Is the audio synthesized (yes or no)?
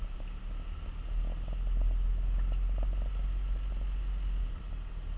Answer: no